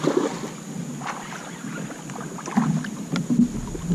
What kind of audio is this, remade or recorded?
recorded